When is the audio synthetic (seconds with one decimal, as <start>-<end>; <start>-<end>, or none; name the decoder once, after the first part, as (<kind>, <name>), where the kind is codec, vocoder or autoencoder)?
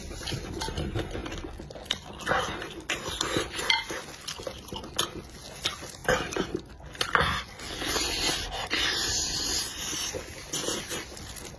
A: none